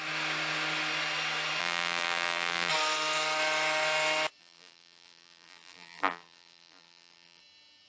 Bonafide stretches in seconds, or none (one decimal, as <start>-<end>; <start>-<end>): 0.0-1.6; 2.7-4.4; 7.4-7.9